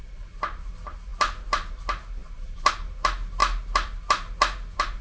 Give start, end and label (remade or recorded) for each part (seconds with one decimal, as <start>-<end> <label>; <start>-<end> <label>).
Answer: 0.0-5.0 recorded

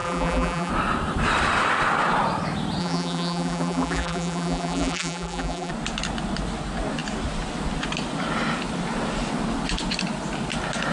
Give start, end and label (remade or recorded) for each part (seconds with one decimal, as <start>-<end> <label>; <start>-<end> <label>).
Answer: 0.0-0.7 remade; 0.7-2.8 recorded; 2.8-5.7 remade; 5.7-10.9 recorded

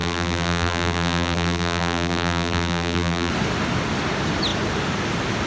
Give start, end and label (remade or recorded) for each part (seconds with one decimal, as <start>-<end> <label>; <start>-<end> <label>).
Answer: 0.0-3.3 remade; 3.3-5.5 recorded

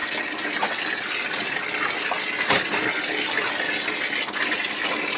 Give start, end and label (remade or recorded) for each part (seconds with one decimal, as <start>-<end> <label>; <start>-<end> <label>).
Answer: 0.0-5.2 recorded